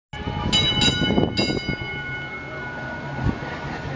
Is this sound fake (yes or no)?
no